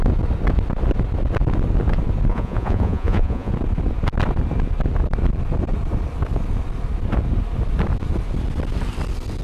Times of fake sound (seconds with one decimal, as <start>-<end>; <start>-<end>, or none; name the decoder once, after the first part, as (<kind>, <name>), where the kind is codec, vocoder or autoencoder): 2.3-3.5 (vocoder, Vocos)